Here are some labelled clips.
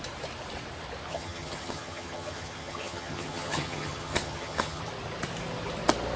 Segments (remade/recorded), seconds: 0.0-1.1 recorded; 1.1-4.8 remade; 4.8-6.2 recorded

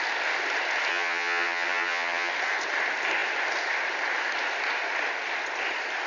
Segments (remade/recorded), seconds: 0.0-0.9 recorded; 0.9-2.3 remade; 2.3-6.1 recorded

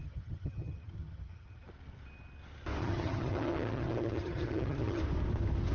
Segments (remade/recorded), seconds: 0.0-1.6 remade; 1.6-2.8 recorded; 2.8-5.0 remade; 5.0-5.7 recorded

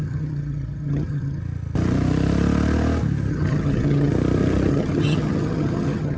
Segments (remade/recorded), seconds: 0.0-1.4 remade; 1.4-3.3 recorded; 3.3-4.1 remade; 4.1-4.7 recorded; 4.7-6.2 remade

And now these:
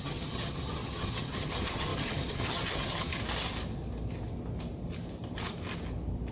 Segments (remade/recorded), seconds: 0.0-3.2 remade; 3.2-6.3 recorded

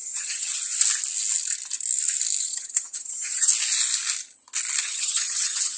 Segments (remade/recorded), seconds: 0.0-0.5 remade; 0.5-2.4 recorded; 2.4-3.5 remade; 3.5-4.8 recorded; 4.8-5.8 remade

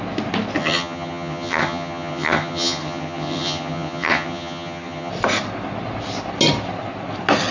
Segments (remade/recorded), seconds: 0.0-0.6 recorded; 0.6-5.1 remade; 5.1-7.5 recorded